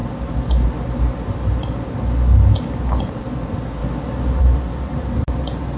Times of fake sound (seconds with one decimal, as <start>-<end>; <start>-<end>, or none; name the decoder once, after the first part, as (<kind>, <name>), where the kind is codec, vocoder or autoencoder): 4.9-5.8 (vocoder, BigVGAN v2)